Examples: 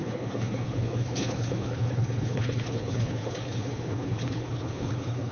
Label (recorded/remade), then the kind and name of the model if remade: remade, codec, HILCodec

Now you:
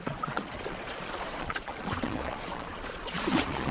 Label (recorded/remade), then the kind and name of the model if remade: remade, vocoder, Vocos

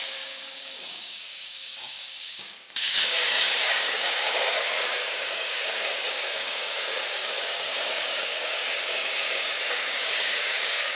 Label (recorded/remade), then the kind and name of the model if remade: remade, codec, DAC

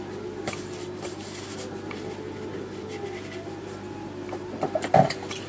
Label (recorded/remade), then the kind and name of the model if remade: recorded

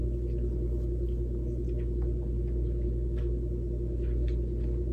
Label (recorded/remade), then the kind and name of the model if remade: recorded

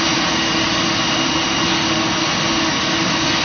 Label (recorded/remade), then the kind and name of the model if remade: recorded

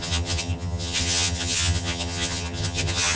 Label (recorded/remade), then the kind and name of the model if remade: remade, vocoder, HiFi-GAN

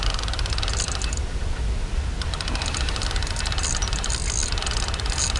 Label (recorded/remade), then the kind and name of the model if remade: recorded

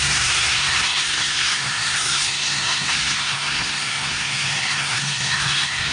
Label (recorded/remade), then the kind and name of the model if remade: remade, codec, SNAC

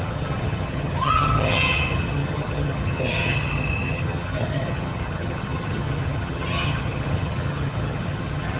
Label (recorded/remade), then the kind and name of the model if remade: remade, vocoder, HiFi-GAN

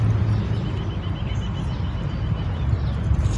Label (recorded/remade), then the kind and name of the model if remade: recorded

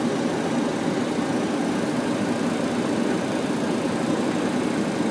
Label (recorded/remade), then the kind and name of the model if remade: recorded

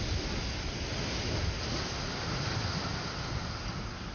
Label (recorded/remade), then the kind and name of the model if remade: recorded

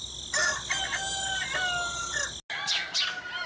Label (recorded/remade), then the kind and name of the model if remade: recorded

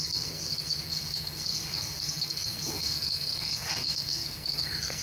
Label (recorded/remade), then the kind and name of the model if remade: remade, codec, SNAC